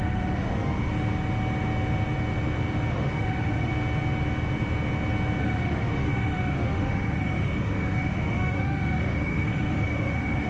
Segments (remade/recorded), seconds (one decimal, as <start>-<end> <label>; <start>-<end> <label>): 0.0-0.9 remade; 0.9-2.9 recorded; 2.9-3.7 remade; 3.7-5.4 recorded; 5.4-10.5 remade